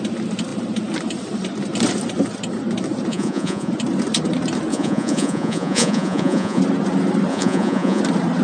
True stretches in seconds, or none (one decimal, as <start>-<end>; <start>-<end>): 0.0-3.1; 3.7-4.7; 6.6-7.3; 8.0-8.4